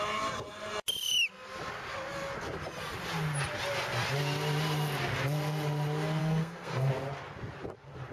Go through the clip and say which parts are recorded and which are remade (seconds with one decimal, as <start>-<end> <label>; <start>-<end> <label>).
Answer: 0.0-6.2 recorded; 6.2-6.9 remade; 6.9-8.1 recorded